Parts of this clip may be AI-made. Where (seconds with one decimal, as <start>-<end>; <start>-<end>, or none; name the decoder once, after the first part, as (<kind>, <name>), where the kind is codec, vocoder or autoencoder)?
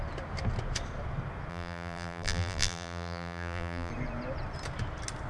1.5-3.9 (vocoder, BigVGAN v2)